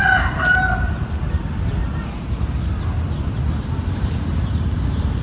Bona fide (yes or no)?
yes